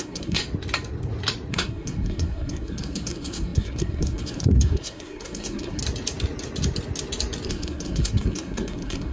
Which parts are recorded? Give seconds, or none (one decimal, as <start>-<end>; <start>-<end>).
0.4-1.5; 5.8-7.5